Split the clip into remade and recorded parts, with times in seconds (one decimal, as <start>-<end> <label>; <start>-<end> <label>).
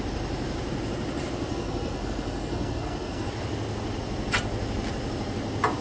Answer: 0.0-1.5 recorded; 1.5-3.3 remade; 3.3-5.8 recorded